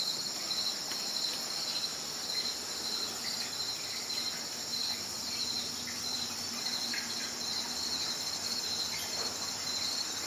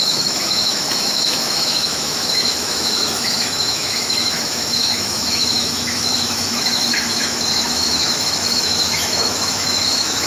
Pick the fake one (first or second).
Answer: second